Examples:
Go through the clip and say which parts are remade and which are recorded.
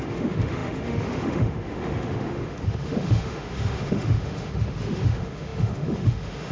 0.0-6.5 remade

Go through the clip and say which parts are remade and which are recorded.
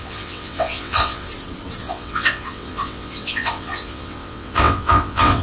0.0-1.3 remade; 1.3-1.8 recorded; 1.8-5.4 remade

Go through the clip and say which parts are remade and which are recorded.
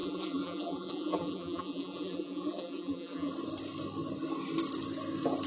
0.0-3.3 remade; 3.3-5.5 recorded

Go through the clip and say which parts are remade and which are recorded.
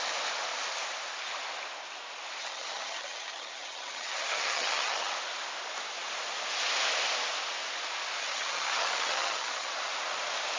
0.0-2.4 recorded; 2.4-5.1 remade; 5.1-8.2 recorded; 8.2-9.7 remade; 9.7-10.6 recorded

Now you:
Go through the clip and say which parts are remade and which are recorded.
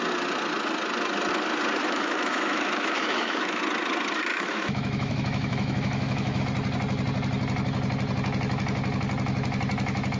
0.0-1.8 recorded; 1.8-3.6 remade; 3.6-4.3 recorded; 4.3-6.4 remade; 6.4-10.2 recorded